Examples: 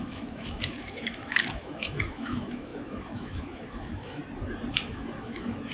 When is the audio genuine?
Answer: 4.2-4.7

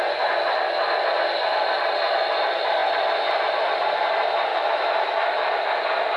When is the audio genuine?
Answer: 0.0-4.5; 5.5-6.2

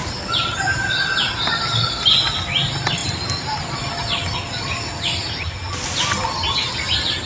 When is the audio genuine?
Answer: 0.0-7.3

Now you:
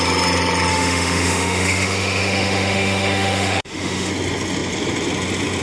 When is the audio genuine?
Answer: 0.0-0.7; 4.1-5.6

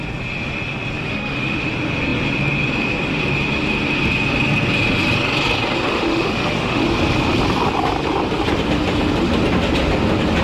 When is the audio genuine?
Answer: 0.0-1.0; 1.7-5.9; 6.8-10.4

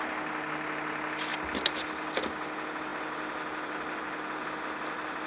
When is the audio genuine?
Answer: 0.0-5.3